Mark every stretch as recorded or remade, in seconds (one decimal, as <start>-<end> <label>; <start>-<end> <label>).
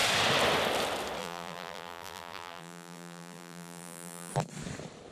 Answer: 0.0-1.2 recorded; 1.2-4.3 remade; 4.3-5.1 recorded